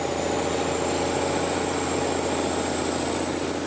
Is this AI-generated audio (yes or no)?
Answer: no